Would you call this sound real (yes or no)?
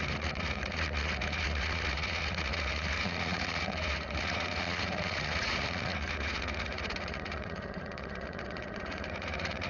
no